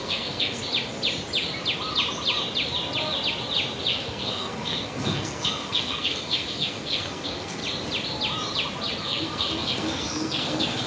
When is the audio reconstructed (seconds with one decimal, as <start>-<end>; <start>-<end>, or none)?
0.0-0.6; 3.9-7.6; 9.0-10.9